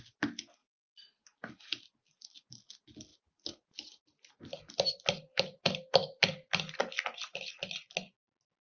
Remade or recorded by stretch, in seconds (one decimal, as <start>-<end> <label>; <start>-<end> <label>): 0.0-8.6 recorded